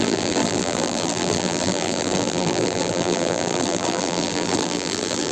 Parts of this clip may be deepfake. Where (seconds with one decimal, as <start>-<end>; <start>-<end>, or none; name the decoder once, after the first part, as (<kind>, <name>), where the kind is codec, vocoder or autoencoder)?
0.0-5.3 (vocoder, BigVGAN v2)